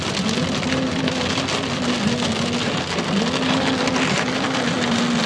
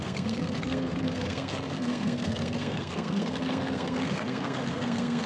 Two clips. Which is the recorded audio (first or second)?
first